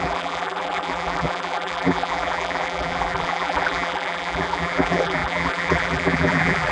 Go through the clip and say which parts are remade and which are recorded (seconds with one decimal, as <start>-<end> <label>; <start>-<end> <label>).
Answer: 0.0-6.7 remade